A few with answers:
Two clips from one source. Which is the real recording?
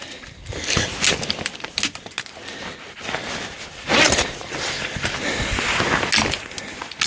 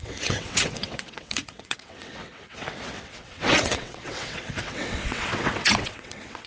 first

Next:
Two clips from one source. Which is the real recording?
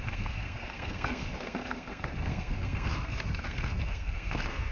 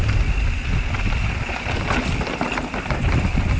second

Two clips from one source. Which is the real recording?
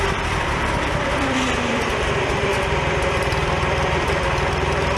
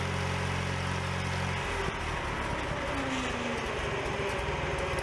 second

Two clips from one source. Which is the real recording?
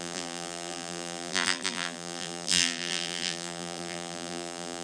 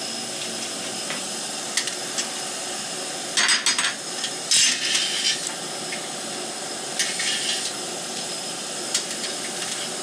second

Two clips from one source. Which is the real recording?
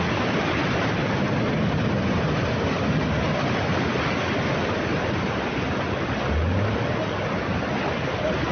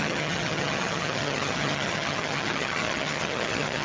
first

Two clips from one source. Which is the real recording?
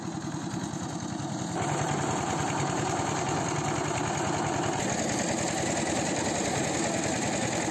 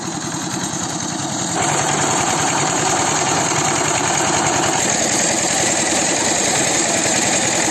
first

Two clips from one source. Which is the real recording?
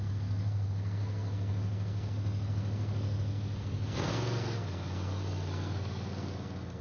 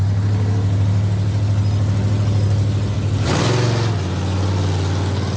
second